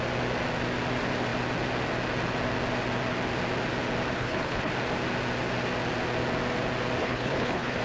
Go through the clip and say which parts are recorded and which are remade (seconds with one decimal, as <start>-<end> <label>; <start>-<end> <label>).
0.0-4.1 recorded; 4.1-4.7 remade; 4.7-7.0 recorded; 7.0-7.8 remade